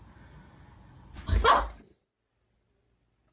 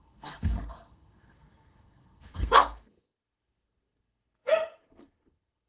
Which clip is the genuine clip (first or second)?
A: first